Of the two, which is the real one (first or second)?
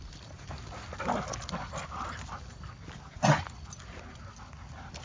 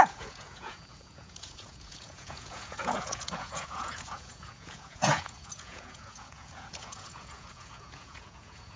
first